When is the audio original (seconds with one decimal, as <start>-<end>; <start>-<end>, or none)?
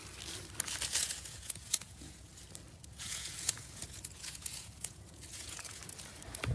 0.0-0.9; 2.3-2.8; 5.8-6.5